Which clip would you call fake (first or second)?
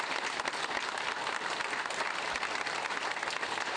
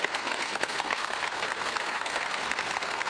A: second